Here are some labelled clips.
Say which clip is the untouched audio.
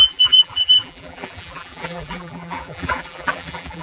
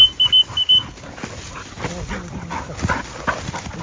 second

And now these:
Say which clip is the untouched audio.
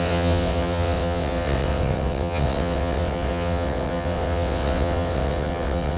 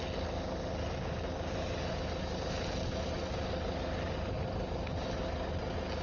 second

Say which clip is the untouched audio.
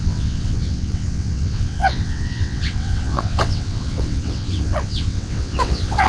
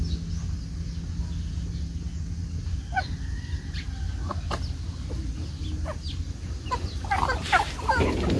second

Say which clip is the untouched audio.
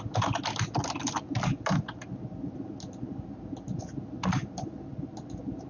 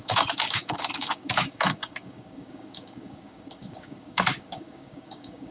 first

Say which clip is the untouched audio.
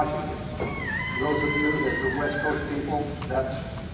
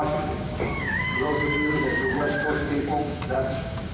first